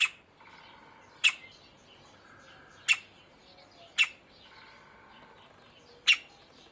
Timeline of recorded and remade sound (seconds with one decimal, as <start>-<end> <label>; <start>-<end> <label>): 0.0-6.7 recorded